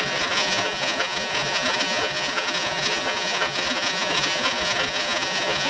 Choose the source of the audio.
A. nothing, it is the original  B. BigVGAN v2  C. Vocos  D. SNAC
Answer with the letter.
C